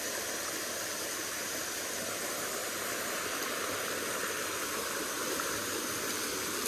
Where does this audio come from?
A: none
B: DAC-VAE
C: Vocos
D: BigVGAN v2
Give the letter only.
A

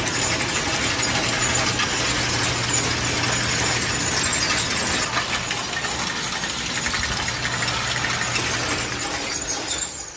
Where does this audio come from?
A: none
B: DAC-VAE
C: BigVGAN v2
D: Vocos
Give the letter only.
A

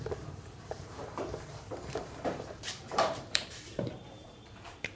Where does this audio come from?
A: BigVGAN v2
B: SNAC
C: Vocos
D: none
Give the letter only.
A